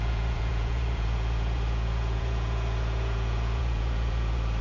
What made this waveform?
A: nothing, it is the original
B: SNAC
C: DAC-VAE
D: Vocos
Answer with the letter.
D